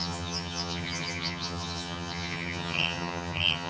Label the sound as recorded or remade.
remade